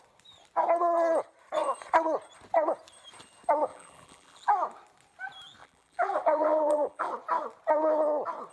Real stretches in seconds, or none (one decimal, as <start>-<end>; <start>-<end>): 0.0-3.7; 4.5-5.6; 7.1-8.5